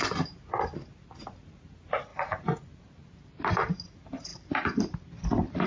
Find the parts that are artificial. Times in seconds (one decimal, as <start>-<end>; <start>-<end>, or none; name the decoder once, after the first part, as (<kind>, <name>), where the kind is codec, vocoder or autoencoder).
none